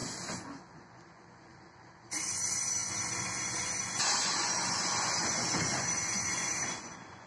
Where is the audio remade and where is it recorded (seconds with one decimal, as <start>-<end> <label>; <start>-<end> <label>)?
0.0-7.3 remade